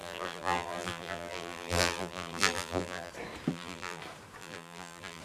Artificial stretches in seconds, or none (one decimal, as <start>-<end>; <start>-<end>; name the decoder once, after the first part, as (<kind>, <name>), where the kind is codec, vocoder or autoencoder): 0.0-3.1 (vocoder, BigVGAN v2); 3.5-4.0; 4.4-5.2